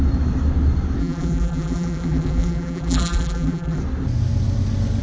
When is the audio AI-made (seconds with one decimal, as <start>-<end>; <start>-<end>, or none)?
1.0-3.8